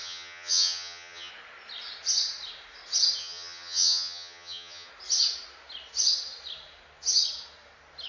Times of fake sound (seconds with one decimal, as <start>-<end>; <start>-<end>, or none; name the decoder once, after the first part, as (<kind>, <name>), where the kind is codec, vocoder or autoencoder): 0.0-1.3 (vocoder, HiFi-GAN); 3.2-4.9